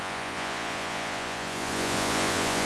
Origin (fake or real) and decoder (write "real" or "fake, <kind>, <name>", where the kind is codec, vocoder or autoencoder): fake, vocoder, Vocos